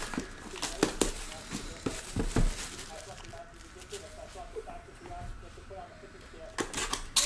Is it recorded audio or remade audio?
recorded